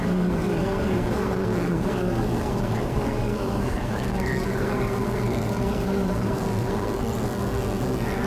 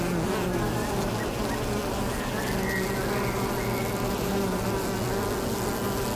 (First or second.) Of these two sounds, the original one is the second